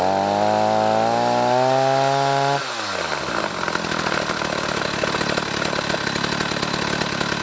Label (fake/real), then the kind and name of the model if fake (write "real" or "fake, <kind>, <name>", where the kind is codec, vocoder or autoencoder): real